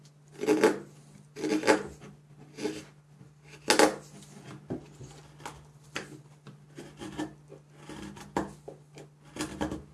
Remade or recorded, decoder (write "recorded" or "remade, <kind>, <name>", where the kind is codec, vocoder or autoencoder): recorded